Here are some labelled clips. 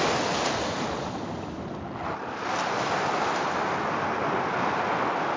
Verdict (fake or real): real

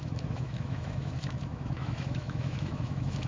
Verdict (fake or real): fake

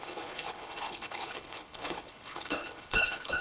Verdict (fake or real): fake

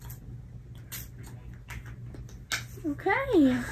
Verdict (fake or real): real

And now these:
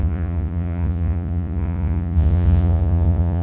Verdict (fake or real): fake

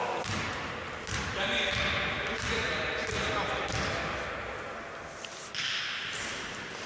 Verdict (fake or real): real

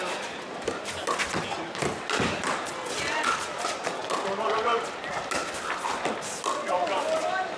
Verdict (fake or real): real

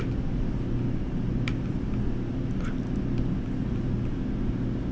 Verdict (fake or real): real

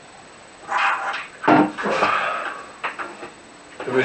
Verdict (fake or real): real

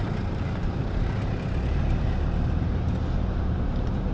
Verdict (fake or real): fake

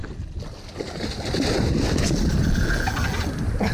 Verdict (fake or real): real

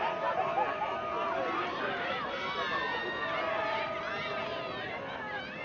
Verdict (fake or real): real